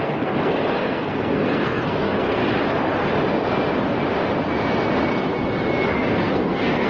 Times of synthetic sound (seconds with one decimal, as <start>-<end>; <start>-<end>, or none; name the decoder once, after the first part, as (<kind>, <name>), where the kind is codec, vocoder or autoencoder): 0.0-2.4 (codec, SNAC); 5.9-6.9